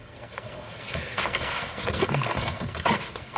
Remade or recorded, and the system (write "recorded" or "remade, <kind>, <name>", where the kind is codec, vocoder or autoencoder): remade, codec, SNAC